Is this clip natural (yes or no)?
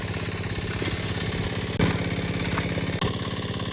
yes